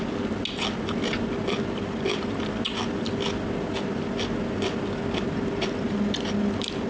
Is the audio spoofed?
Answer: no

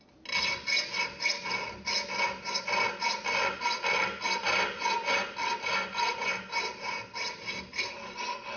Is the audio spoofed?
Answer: no